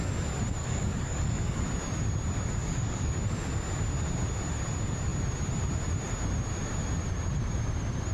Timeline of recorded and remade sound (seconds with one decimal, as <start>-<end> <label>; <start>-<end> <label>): 0.0-0.6 recorded; 0.6-1.6 remade; 1.6-2.6 recorded; 2.6-3.1 remade; 3.1-8.1 recorded